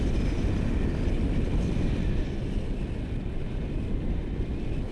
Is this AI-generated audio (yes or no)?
no